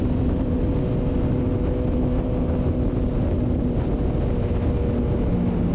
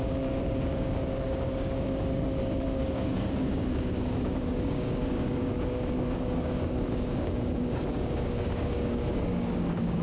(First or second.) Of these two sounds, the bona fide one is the first